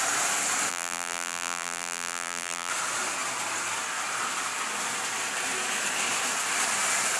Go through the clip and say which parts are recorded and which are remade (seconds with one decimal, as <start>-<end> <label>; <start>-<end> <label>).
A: 0.0-0.7 recorded; 0.7-2.7 remade; 2.7-7.2 recorded